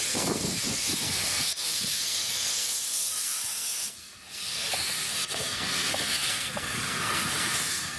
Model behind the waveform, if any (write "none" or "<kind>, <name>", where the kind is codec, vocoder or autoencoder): codec, SNAC